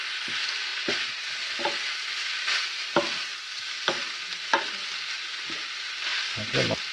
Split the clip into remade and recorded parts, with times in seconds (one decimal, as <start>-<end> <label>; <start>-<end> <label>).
0.0-6.9 recorded